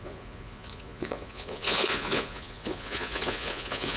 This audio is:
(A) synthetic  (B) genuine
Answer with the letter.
A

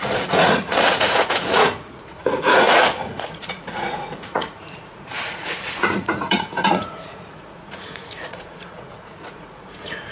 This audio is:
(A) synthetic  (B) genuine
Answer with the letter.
A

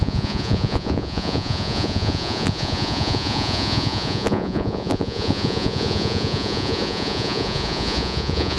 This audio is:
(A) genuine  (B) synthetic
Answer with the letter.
B